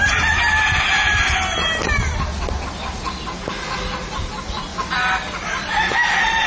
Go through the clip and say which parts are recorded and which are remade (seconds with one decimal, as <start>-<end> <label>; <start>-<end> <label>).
0.0-6.5 recorded